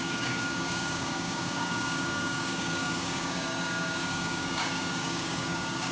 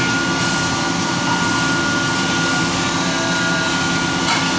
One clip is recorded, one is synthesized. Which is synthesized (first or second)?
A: first